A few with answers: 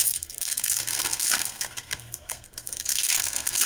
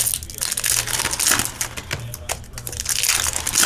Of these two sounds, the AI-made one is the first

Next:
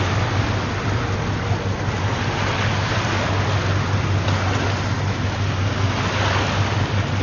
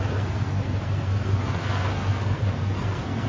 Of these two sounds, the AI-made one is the second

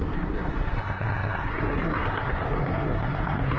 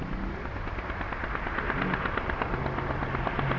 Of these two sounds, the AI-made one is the first